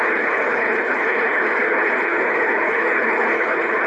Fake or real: fake